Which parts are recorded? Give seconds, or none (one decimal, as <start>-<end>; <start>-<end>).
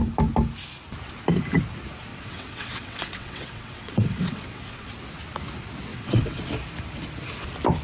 0.0-2.1; 4.9-5.9; 6.4-7.8